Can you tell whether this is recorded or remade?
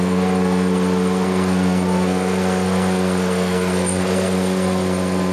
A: remade